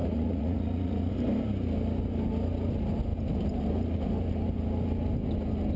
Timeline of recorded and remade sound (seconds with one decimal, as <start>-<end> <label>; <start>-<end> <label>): 0.0-1.1 remade; 1.1-5.8 recorded